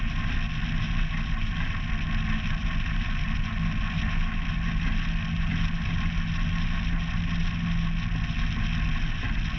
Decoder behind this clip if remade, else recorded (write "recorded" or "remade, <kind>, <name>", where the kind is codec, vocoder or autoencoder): recorded